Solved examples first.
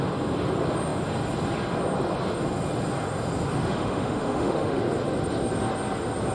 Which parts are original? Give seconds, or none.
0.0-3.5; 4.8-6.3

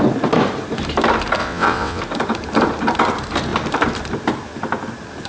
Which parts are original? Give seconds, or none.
0.0-1.4; 2.0-5.3

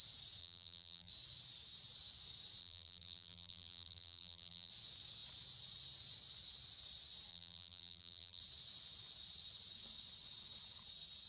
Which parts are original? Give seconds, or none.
0.0-0.4; 1.1-2.6; 4.7-7.3; 8.4-11.3